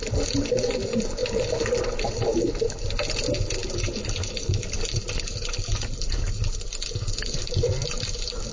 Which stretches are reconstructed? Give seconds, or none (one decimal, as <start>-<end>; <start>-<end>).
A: none